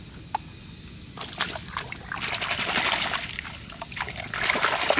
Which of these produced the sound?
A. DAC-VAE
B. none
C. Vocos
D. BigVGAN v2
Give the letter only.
B